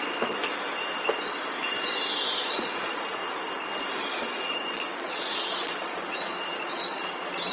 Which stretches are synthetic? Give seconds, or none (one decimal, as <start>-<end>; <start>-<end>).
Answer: 0.0-0.4; 1.1-3.2; 3.8-7.5